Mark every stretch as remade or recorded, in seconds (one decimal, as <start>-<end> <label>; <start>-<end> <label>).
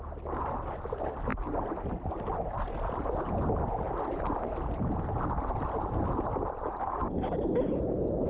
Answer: 0.0-8.3 recorded